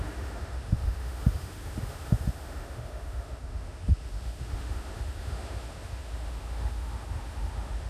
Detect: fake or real fake